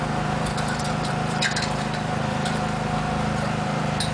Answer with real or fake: fake